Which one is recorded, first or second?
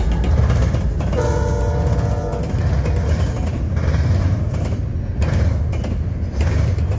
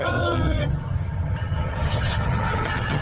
first